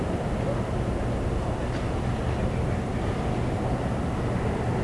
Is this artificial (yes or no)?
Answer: no